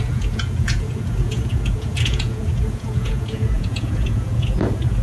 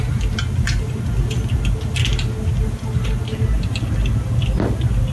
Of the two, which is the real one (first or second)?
second